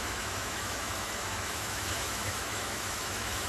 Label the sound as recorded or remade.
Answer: remade